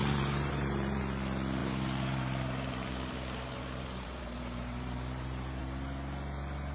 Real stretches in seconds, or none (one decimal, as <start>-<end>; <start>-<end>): 1.0-1.6; 5.6-6.7